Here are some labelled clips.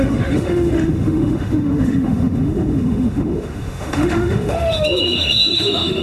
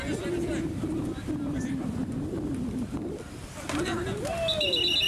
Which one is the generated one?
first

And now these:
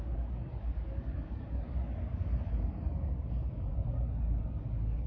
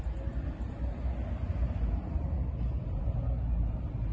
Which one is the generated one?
first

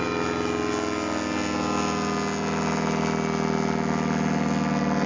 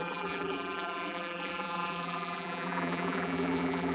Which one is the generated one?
second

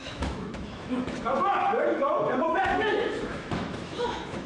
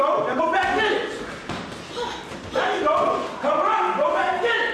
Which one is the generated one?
first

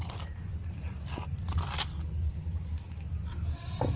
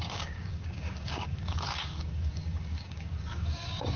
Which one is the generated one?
second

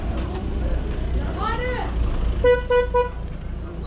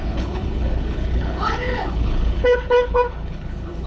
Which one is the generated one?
second